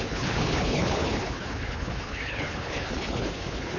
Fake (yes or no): yes